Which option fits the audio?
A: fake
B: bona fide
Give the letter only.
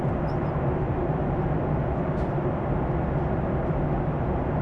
A